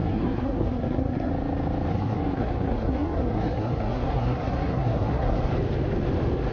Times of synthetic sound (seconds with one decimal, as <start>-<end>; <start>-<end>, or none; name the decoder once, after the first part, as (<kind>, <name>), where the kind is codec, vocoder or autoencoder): 0.0-1.3 (codec, SNAC); 1.9-5.5